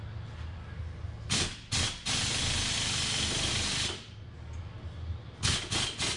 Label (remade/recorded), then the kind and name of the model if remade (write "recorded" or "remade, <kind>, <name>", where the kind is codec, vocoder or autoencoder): recorded